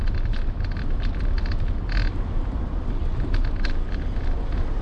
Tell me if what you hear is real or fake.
real